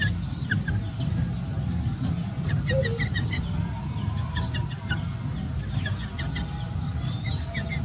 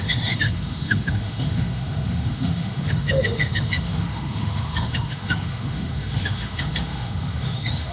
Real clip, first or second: first